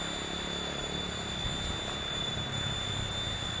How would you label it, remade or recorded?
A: recorded